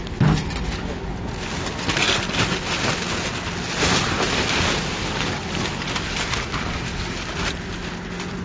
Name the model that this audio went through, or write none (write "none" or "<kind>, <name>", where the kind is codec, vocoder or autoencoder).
none